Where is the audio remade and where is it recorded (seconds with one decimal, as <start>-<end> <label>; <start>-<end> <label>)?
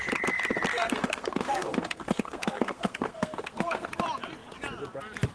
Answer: 0.0-0.7 recorded; 0.7-3.9 remade; 3.9-5.3 recorded